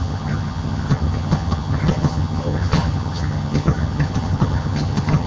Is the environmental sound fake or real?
fake